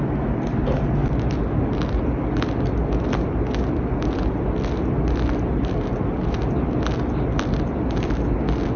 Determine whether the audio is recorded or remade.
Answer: recorded